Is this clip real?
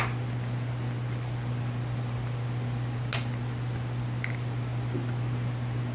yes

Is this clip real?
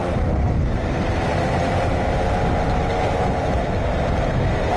no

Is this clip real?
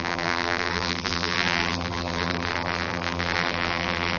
no